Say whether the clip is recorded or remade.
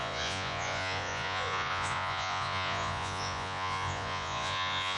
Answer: remade